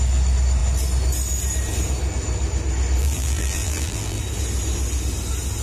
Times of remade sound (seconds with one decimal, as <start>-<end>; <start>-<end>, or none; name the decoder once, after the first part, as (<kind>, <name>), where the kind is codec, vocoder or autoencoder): 3.0-4.2 (vocoder, BigVGAN v2)